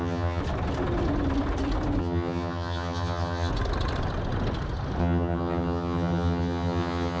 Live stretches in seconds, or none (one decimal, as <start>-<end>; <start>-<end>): 0.4-2.0; 3.5-5.0

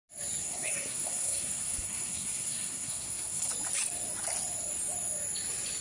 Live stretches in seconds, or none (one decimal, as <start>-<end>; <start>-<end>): 0.0-0.4; 3.5-5.8